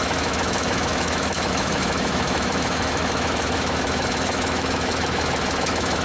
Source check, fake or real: fake